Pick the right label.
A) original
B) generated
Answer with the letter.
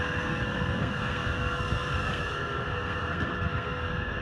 B